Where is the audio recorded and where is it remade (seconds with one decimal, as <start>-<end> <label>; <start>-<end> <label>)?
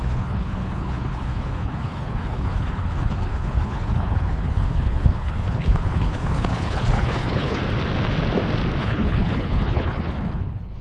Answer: 0.0-7.6 remade; 7.6-8.8 recorded; 8.8-10.8 remade